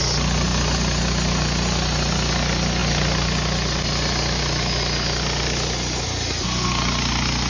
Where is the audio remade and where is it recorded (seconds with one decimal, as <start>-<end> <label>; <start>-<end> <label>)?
0.0-7.5 recorded